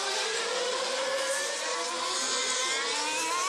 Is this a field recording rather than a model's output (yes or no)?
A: yes